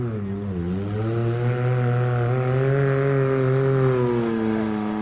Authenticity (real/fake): real